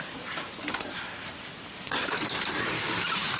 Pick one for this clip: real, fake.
fake